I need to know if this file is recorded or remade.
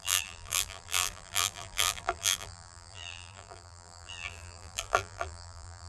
remade